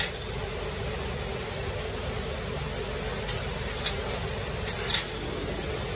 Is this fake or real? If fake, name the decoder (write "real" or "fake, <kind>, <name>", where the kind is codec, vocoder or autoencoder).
real